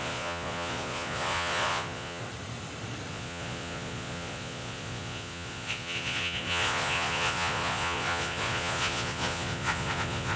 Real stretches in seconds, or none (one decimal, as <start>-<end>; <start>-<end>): 2.2-3.1